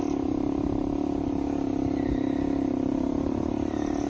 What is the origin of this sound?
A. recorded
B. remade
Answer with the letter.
B